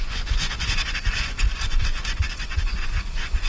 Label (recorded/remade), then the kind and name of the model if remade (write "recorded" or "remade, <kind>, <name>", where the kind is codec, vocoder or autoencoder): remade, vocoder, Vocos